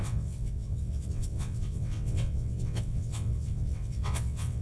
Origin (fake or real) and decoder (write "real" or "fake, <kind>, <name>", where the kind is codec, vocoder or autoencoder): fake, vocoder, WaveNeXt